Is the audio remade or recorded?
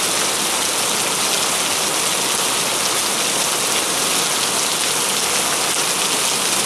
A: recorded